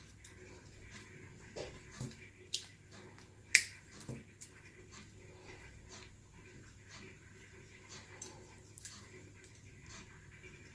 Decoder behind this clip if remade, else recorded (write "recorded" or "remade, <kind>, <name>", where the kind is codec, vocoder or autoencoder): recorded